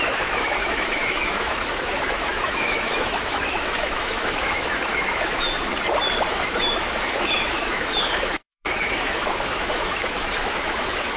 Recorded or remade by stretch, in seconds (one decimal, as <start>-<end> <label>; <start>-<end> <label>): 0.0-5.7 remade; 5.7-6.3 recorded; 6.3-11.2 remade